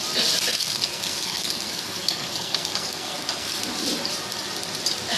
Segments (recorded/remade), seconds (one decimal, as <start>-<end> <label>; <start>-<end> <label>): 0.0-0.5 recorded; 0.5-3.6 remade; 3.6-5.2 recorded